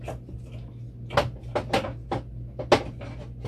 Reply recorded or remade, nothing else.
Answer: recorded